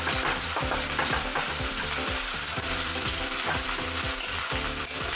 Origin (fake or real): fake